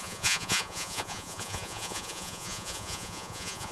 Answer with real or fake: fake